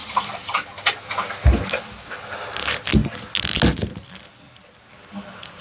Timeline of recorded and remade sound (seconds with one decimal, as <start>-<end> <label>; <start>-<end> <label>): 0.0-5.6 recorded